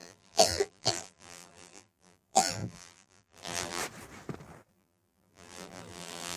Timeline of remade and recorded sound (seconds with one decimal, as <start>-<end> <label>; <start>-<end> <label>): 0.0-3.8 remade; 3.8-4.7 recorded; 4.7-6.4 remade